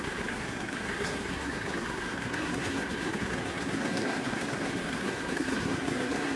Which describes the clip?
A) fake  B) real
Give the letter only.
A